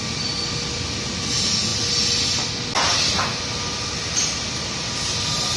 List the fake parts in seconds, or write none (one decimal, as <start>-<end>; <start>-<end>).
none